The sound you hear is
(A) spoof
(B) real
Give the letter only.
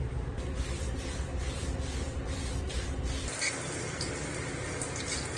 B